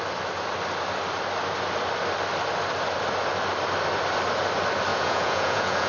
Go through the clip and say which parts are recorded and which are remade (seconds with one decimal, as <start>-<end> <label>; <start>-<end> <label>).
0.0-4.9 recorded; 4.9-5.9 remade